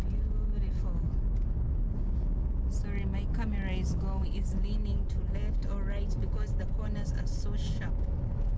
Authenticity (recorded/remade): recorded